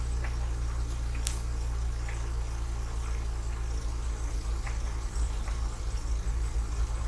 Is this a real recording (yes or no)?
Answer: yes